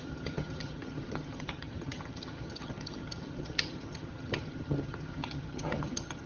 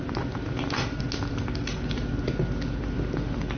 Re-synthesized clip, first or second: first